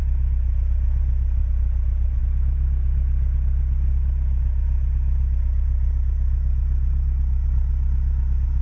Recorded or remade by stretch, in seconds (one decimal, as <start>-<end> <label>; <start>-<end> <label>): 0.0-8.6 recorded